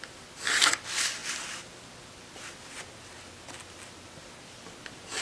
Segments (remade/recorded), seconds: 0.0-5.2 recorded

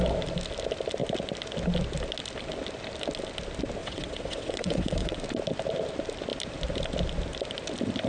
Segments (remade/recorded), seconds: 0.0-3.8 recorded; 3.8-5.2 remade; 5.2-8.1 recorded

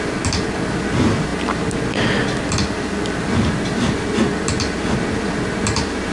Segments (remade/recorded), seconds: 0.0-6.1 recorded

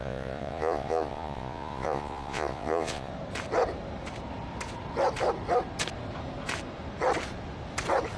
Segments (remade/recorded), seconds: 0.0-3.1 remade; 3.1-8.2 recorded

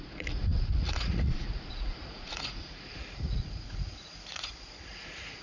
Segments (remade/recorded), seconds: 0.0-5.4 remade